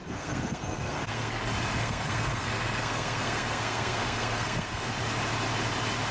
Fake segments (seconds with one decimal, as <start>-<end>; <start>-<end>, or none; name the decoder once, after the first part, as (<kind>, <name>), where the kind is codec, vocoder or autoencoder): 0.0-1.4 (codec, SNAC); 1.8-4.9